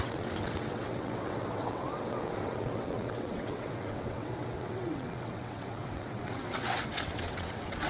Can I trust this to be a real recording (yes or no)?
no